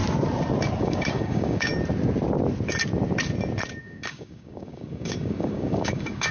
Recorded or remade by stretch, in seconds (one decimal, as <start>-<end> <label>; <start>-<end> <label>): 0.0-0.8 recorded; 0.8-1.7 remade; 1.7-3.8 recorded; 3.8-6.3 remade